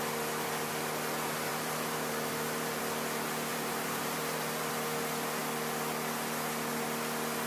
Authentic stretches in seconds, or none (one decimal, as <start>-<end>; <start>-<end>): 0.0-1.5; 2.8-3.5; 4.7-7.5